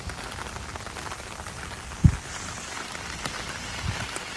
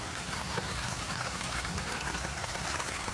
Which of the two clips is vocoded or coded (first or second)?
second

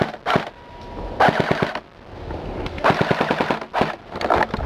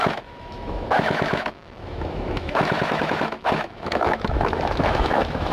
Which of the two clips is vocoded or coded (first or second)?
second